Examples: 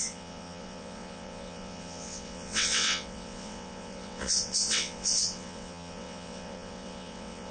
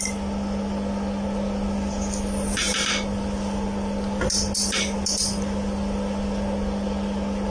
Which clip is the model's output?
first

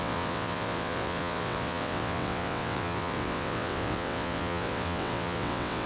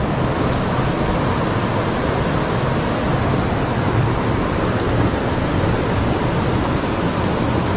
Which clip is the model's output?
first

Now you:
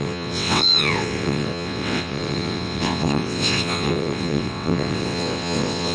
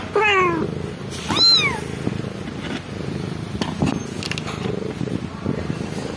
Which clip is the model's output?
first